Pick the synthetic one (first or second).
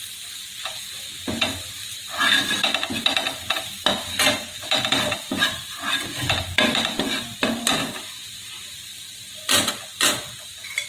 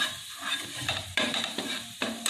second